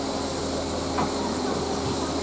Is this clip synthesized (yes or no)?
no